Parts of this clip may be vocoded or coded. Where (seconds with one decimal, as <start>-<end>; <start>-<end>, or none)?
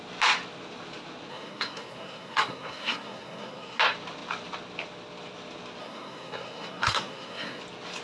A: 1.3-3.8; 5.8-7.6